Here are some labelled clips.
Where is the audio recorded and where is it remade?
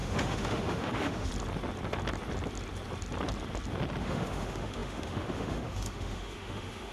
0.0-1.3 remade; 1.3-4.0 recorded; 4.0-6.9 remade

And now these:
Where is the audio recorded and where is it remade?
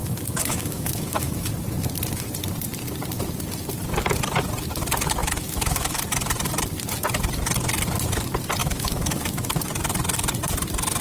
0.0-1.5 remade; 1.5-5.2 recorded; 5.2-6.0 remade; 6.0-8.6 recorded; 8.6-9.6 remade; 9.6-11.0 recorded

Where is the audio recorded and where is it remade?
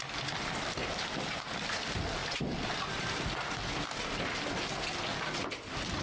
0.0-6.0 recorded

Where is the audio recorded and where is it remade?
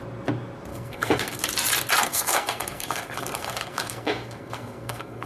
0.0-0.7 recorded; 0.7-1.4 remade; 1.4-2.0 recorded; 2.0-5.3 remade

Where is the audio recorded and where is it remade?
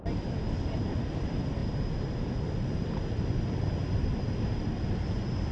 0.0-5.5 recorded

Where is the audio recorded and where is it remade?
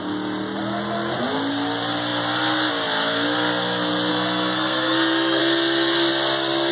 0.0-4.1 recorded; 4.1-5.4 remade; 5.4-6.7 recorded